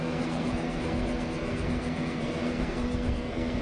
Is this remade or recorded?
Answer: remade